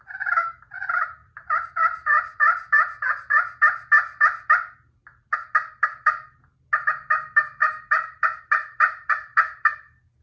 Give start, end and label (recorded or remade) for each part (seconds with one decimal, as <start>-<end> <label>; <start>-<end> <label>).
0.0-1.2 recorded; 1.2-3.1 remade; 3.1-7.6 recorded; 7.6-8.4 remade; 8.4-10.2 recorded